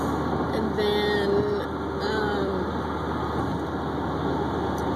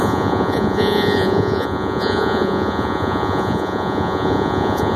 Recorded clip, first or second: first